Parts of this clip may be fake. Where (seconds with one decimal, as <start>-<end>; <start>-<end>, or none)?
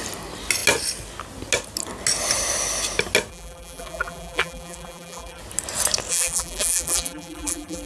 3.3-5.4; 6.1-7.9